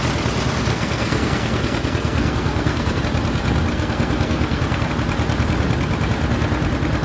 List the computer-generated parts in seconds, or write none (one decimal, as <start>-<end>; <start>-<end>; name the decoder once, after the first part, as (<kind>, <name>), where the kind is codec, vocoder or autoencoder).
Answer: 0.7-3.0 (codec, SNAC); 3.7-4.9